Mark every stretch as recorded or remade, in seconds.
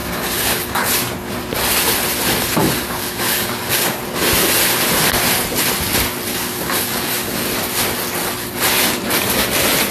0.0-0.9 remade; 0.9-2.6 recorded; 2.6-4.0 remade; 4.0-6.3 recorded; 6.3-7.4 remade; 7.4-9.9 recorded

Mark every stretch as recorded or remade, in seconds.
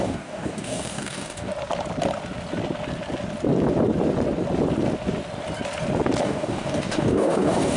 0.0-1.5 remade; 1.5-6.2 recorded; 6.2-7.8 remade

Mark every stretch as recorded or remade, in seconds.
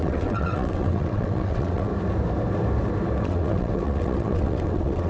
0.0-1.9 remade; 1.9-3.2 recorded; 3.2-5.1 remade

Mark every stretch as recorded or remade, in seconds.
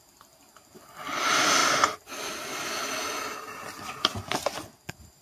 0.0-5.2 recorded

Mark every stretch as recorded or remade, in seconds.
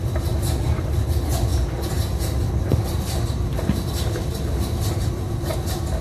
0.0-6.0 recorded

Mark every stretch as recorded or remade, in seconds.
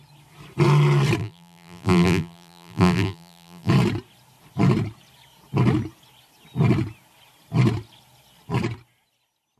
0.0-1.2 recorded; 1.2-3.7 remade; 3.7-9.6 recorded